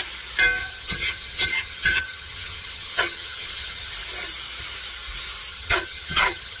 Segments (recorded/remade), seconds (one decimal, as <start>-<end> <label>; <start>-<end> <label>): 0.0-0.6 recorded; 0.6-3.9 remade; 3.9-5.5 recorded; 5.5-6.6 remade